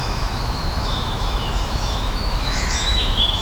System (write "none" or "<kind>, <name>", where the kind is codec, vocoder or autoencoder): autoencoder, DAC-VAE